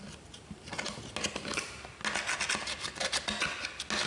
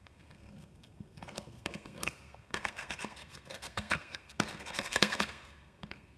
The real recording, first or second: first